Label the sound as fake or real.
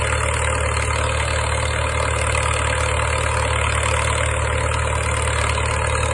real